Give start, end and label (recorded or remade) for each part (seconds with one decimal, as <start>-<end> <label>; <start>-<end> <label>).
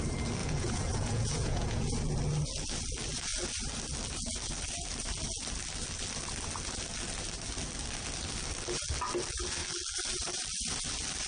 0.0-0.4 recorded; 0.4-1.8 remade; 1.8-11.3 recorded